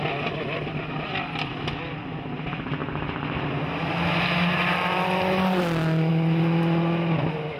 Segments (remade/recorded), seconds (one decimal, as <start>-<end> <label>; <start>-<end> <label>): 0.0-7.6 recorded